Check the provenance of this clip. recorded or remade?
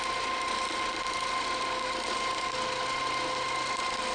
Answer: recorded